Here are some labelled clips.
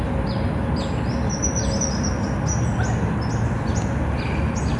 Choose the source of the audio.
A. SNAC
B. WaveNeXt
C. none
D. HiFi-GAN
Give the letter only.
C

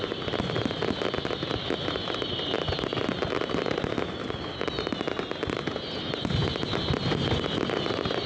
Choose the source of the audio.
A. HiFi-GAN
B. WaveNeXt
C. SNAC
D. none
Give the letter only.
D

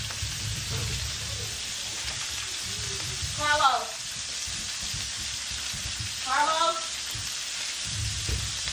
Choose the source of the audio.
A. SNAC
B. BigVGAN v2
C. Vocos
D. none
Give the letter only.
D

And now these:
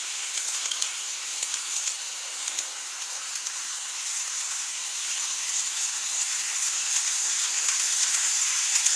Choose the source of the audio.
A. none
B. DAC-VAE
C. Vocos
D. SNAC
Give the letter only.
D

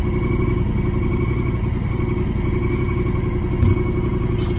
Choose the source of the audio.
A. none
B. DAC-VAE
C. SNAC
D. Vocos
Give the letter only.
A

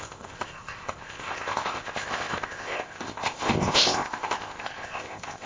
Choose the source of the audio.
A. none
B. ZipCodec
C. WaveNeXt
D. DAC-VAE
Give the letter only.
B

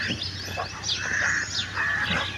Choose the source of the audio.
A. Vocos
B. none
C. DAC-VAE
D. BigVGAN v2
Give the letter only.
B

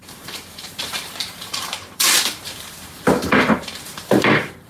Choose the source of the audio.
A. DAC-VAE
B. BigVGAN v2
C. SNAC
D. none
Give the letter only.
B